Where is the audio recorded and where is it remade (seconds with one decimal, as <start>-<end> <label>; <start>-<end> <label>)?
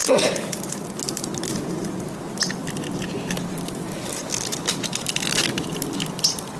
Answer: 0.0-6.6 recorded